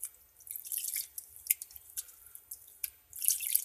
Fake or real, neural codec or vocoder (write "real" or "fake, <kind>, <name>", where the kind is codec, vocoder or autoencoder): real